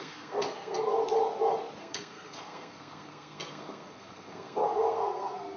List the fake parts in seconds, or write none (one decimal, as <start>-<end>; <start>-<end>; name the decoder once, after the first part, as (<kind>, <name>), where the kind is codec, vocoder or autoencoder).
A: 0.0-0.9 (codec, SNAC); 1.8-5.6

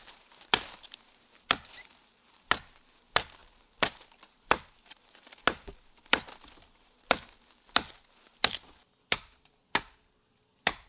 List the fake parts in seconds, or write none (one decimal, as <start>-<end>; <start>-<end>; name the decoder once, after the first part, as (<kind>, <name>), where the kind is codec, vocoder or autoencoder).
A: none

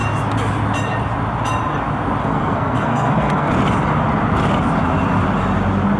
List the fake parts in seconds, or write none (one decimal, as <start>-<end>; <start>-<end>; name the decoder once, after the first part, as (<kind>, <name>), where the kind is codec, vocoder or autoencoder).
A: 2.2-3.5 (codec, SNAC)

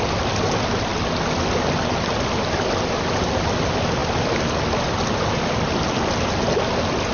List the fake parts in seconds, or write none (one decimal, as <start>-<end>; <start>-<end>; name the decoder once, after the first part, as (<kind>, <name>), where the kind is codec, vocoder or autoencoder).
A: none

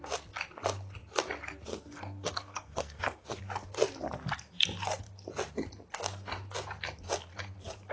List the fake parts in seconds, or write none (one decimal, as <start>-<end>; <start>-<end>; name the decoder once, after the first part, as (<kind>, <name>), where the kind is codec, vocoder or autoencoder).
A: 1.7-3.4 (codec, SNAC)

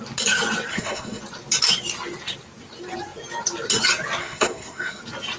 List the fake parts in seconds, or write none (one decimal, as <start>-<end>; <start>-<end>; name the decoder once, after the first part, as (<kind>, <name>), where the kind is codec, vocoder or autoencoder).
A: 0.7-1.2 (codec, SNAC); 4.2-5.0